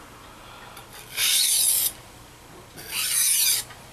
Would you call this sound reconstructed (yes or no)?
no